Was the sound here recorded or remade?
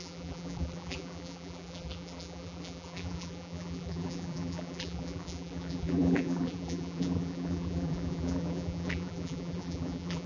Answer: remade